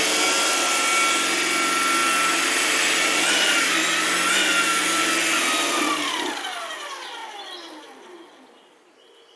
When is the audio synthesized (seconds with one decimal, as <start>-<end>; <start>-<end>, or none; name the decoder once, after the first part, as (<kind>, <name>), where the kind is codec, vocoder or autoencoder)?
none